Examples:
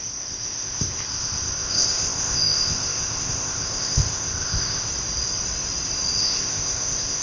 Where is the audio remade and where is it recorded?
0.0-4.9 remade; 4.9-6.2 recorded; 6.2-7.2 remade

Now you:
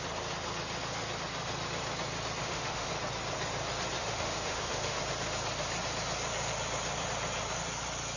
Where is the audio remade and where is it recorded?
0.0-2.4 recorded; 2.4-2.9 remade; 2.9-4.0 recorded; 4.0-5.0 remade; 5.0-8.2 recorded